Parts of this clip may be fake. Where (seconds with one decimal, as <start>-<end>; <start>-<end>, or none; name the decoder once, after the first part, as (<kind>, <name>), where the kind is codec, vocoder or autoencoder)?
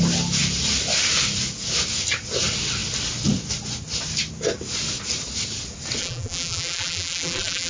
6.0-7.7 (vocoder, BigVGAN v2)